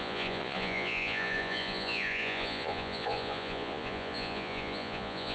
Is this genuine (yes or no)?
no